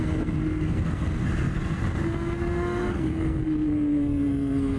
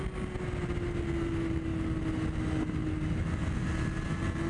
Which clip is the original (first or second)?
second